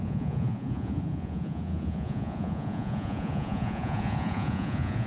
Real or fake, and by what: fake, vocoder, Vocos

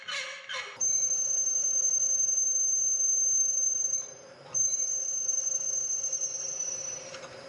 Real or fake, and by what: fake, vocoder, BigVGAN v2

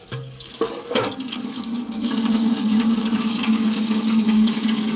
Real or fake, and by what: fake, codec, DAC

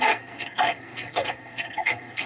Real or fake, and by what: fake, codec, SNAC